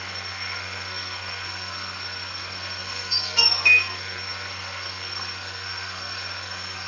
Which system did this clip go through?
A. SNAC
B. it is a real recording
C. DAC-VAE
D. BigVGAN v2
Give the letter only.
A